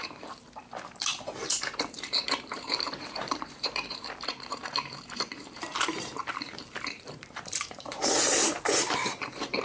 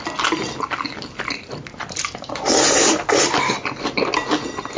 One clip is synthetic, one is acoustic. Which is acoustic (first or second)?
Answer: second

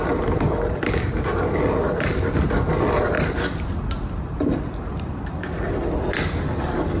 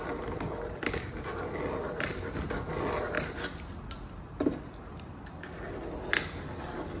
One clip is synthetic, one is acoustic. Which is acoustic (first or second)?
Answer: second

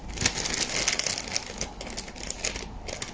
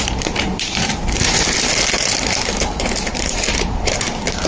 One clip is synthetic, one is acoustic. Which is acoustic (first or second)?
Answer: first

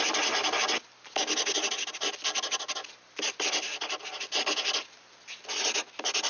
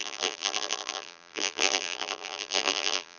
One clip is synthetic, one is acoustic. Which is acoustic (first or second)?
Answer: first